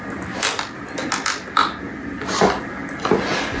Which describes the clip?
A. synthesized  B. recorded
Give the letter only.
B